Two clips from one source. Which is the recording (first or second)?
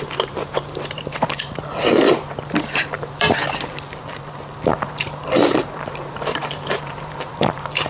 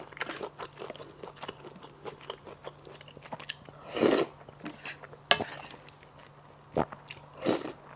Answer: second